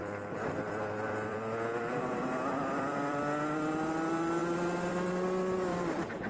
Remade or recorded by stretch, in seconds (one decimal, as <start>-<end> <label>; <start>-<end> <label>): 0.0-3.2 remade; 3.2-5.7 recorded; 5.7-6.3 remade